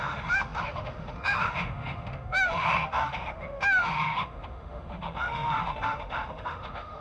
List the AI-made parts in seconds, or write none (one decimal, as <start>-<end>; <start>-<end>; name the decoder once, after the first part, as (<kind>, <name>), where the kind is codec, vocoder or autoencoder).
0.0-7.0 (autoencoder, DAC-VAE)